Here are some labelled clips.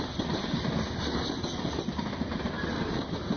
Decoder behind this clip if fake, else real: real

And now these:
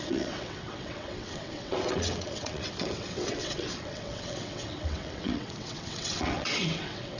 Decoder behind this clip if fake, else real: fake, vocoder, WaveNeXt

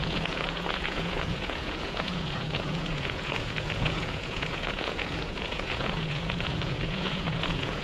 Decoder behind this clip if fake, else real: fake, vocoder, Vocos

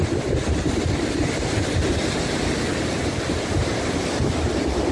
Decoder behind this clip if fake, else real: real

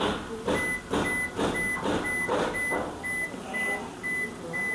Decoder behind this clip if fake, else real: real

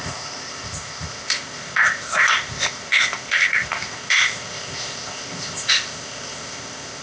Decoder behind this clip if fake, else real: fake, codec, ZipCodec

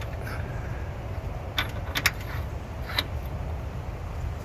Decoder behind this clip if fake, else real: real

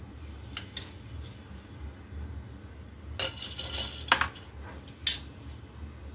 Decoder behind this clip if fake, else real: real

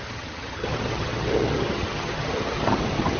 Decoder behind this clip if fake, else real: fake, vocoder, HiFi-GAN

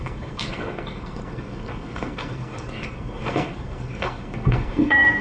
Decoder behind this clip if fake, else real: fake, codec, SNAC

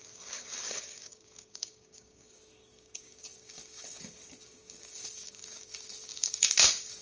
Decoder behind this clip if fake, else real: fake, codec, DAC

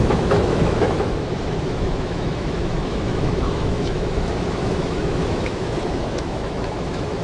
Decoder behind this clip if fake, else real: fake, autoencoder, DAC-VAE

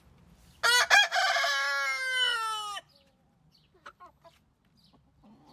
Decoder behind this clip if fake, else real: real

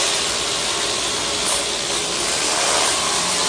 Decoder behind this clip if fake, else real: real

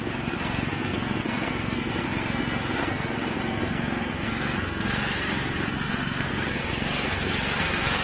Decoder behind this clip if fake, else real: fake, codec, SNAC